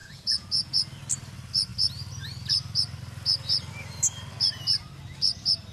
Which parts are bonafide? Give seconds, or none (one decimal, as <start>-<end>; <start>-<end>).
0.7-5.7